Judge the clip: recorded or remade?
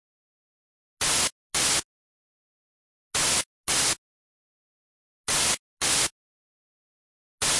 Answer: recorded